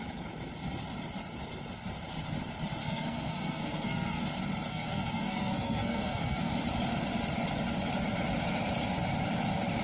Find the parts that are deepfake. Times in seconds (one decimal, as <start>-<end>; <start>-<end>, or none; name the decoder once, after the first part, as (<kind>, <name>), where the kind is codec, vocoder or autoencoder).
2.8-4.2 (codec, SNAC); 4.7-6.5